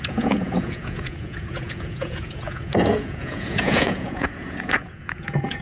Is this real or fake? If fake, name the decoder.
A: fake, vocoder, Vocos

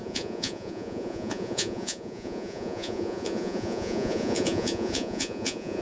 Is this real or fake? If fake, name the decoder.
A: fake, vocoder, Vocos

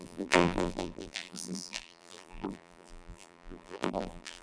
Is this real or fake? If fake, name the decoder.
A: fake, vocoder, BigVGAN v2